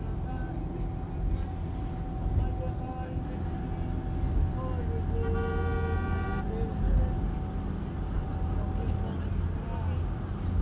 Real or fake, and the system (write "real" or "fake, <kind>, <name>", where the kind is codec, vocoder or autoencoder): real